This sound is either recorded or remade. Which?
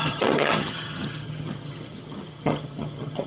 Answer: remade